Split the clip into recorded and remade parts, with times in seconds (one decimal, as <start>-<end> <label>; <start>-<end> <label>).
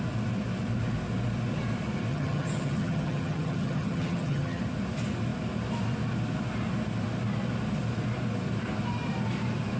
0.0-2.1 recorded; 2.1-4.6 remade; 4.6-9.8 recorded